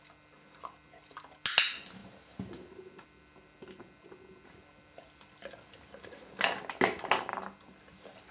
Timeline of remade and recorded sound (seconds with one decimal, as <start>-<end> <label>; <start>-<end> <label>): 0.0-2.0 recorded; 2.0-2.8 remade; 2.8-8.3 recorded